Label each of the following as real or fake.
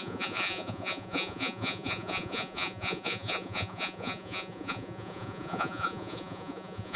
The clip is fake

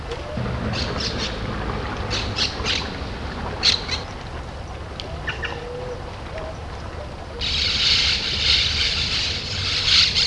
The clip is real